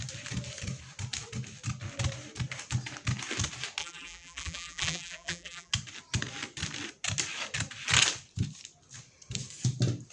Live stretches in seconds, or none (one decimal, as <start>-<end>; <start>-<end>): 0.0-3.8; 5.7-10.1

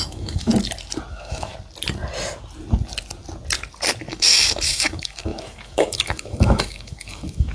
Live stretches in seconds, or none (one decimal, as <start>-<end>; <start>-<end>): 0.5-1.1; 1.5-4.1

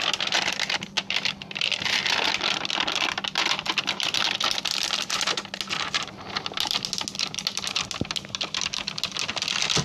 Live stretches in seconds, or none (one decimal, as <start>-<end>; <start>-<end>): 0.0-9.8

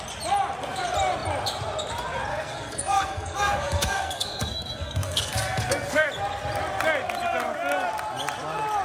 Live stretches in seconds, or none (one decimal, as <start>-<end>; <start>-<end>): 0.0-2.3; 6.1-8.8